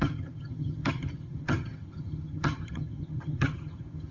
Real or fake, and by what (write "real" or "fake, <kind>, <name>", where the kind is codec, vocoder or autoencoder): fake, vocoder, HiFi-GAN